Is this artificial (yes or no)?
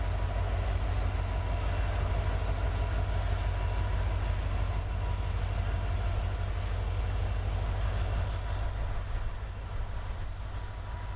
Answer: no